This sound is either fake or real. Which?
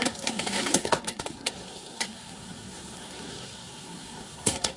fake